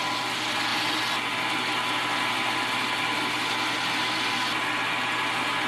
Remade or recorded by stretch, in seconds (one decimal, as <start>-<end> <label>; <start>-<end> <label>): 0.0-5.7 recorded